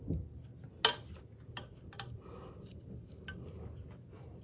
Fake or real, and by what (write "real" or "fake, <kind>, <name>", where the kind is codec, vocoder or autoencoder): real